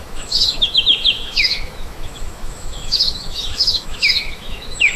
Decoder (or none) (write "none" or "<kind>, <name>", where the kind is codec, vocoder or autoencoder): autoencoder, DAC-VAE